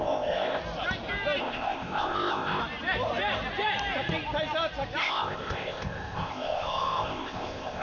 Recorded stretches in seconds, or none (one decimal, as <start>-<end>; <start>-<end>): 0.6-1.4; 2.6-5.0